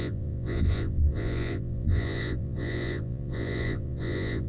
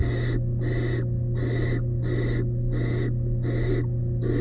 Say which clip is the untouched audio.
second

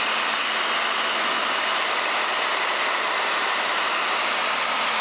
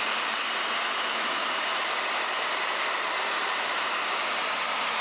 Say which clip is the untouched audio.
first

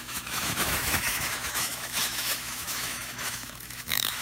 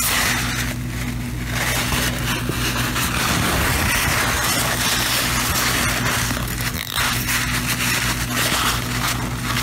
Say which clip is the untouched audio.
second